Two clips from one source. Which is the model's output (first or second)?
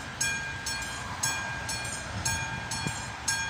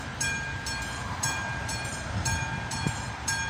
second